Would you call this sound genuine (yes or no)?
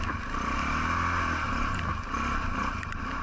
yes